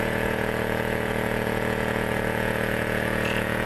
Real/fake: fake